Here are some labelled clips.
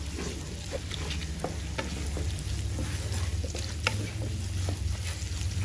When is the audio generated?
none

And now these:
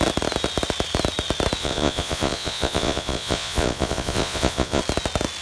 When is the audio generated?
1.6-4.8 (vocoder, Vocos)

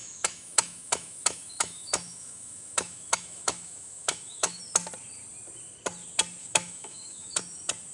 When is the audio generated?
0.0-4.6 (autoencoder, DAC-VAE); 6.4-7.4